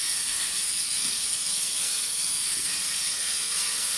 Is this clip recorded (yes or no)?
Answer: no